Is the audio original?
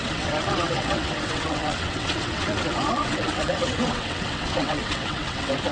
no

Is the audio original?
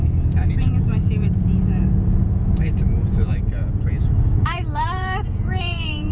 no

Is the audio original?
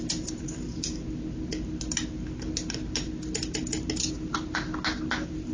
yes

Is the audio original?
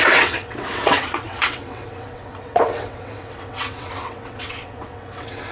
no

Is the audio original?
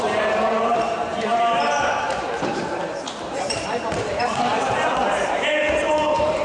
no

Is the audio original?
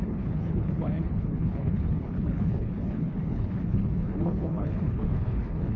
no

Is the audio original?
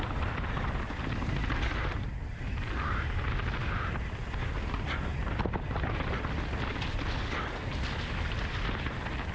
yes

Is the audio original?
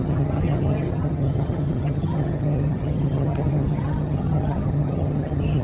no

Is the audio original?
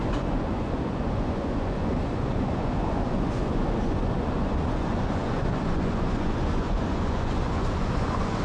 no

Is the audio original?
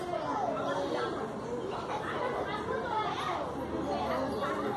yes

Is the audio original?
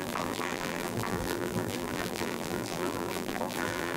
no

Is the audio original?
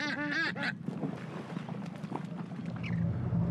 yes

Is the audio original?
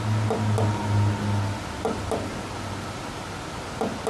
yes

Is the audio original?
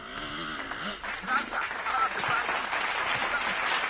yes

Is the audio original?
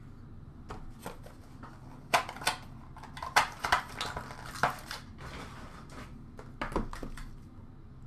yes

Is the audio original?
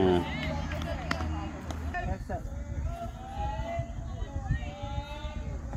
yes